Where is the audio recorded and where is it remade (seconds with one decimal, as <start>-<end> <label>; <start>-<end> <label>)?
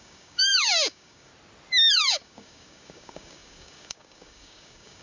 0.0-1.3 remade; 1.3-1.9 recorded; 1.9-5.0 remade